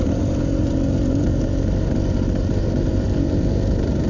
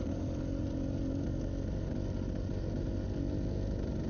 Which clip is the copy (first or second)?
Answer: first